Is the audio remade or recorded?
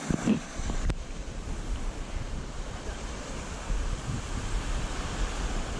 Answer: remade